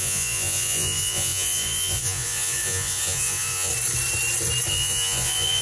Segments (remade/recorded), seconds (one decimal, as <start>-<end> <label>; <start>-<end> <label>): 0.0-3.7 remade; 3.7-4.7 recorded; 4.7-5.6 remade